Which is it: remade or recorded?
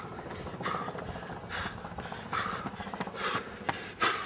recorded